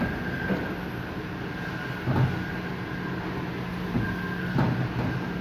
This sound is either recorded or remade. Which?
recorded